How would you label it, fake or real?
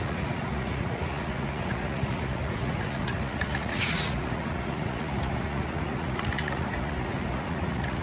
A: fake